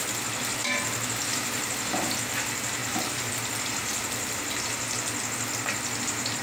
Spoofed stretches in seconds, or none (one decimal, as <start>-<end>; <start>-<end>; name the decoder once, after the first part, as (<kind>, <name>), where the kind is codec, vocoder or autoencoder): 2.8-3.3 (vocoder, BigVGAN v2)